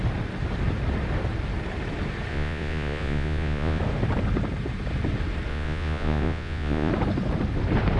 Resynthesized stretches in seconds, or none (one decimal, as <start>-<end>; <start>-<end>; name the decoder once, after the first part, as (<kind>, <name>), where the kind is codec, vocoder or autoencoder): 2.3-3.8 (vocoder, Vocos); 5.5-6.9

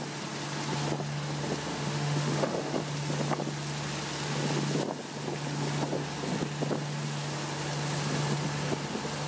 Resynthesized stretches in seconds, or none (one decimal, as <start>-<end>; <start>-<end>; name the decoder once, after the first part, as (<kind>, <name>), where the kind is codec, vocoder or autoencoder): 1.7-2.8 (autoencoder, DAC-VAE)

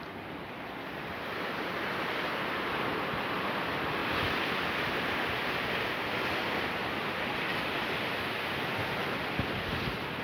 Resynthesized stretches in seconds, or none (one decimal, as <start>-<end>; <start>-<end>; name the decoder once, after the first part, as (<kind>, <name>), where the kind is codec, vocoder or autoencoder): none